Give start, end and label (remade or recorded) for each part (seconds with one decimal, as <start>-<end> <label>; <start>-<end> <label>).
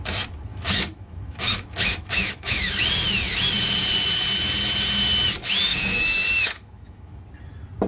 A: 0.0-0.5 recorded; 0.5-2.8 remade; 2.8-5.7 recorded; 5.7-7.2 remade; 7.2-7.9 recorded